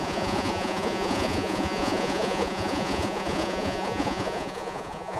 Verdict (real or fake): fake